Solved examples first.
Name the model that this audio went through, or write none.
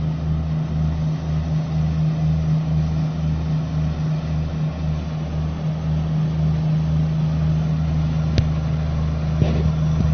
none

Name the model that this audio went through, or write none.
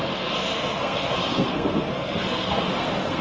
codec, SNAC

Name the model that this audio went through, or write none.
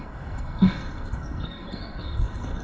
codec, SNAC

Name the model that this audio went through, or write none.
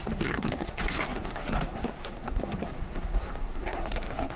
codec, SNAC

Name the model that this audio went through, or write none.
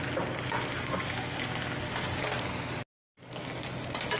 none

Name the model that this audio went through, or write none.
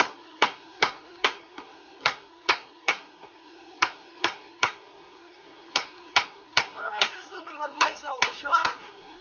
codec, SNAC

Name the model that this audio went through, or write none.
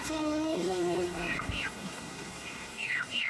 codec, SNAC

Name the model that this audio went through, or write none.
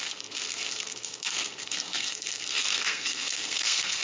codec, SNAC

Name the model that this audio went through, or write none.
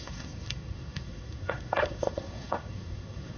codec, SNAC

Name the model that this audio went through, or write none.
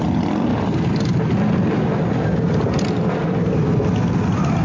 none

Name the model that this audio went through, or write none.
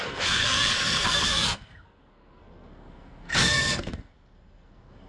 codec, SNAC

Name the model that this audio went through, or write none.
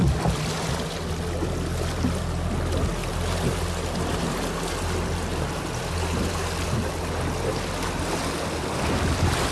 none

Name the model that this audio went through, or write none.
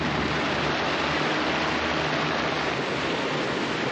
none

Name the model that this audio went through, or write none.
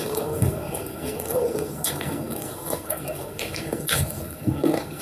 codec, SNAC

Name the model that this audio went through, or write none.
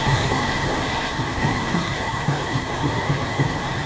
codec, SNAC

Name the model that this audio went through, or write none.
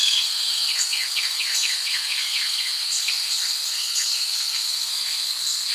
codec, SNAC